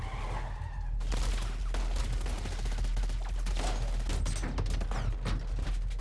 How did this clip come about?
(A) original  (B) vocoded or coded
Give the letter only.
A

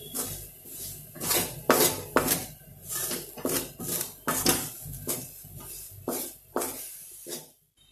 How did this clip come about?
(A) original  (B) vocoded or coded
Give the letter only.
A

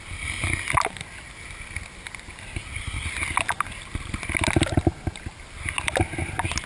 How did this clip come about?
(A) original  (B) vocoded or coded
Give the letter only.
A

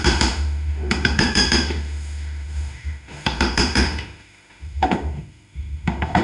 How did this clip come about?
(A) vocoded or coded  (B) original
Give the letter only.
A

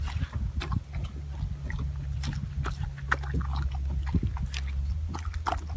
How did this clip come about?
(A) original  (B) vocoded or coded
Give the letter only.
A